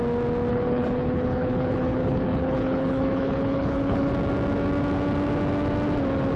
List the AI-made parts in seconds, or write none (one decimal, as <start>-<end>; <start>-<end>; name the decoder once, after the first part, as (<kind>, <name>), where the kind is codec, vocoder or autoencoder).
0.5-4.1 (codec, HILCodec)